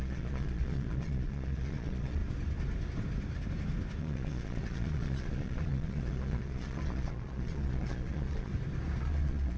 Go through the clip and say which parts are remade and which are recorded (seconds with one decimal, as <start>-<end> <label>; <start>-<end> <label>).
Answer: 0.0-2.2 remade; 2.2-4.0 recorded; 4.0-8.5 remade; 8.5-9.0 recorded; 9.0-9.6 remade